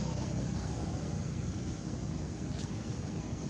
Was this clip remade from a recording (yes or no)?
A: yes